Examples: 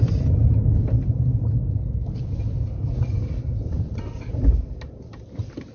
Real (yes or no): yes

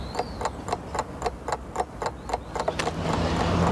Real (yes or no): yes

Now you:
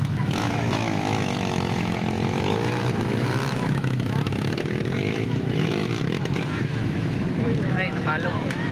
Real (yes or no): no